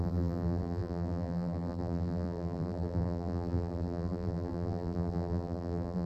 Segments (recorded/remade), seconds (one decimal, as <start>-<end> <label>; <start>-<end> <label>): 0.0-6.1 remade